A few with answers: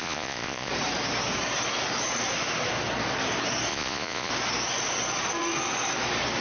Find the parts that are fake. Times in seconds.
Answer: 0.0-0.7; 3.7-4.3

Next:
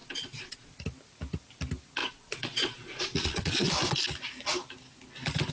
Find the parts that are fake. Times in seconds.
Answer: 0.0-0.7; 2.0-3.7